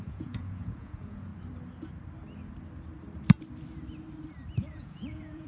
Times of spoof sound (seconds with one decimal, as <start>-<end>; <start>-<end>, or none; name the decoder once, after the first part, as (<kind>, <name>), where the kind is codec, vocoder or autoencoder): 0.0-1.3 (vocoder, Vocos); 4.6-5.5